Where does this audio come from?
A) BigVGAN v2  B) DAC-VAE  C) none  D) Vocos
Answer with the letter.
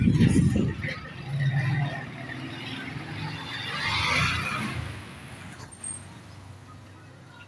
C